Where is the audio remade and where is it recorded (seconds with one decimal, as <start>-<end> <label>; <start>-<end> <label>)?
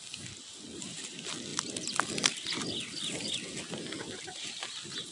0.0-5.1 recorded